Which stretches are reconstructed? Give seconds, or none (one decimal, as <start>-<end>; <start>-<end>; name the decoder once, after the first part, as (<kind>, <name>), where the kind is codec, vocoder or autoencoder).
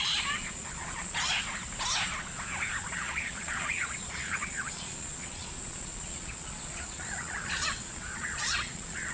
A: 0.0-1.3 (vocoder, Vocos); 2.8-9.1